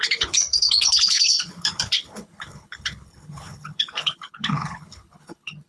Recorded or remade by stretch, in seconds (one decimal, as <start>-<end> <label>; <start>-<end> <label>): 0.0-5.7 remade